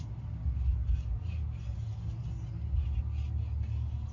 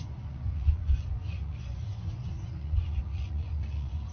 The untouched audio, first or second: first